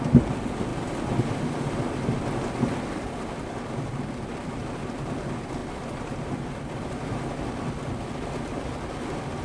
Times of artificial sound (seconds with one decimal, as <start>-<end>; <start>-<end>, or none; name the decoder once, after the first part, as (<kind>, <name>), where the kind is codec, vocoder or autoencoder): 5.6-7.7 (vocoder, BigVGAN v2)